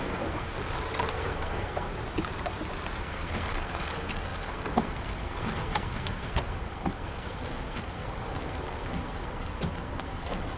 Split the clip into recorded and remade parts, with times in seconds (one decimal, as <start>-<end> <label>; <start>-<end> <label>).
0.0-0.6 remade; 0.6-1.1 recorded; 1.1-1.9 remade; 1.9-3.0 recorded; 3.0-10.6 remade